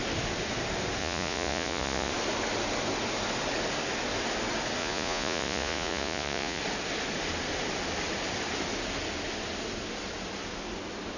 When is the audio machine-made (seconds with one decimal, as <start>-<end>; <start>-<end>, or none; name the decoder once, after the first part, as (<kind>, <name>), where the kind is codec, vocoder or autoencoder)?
1.0-2.1 (vocoder, Vocos); 4.8-6.6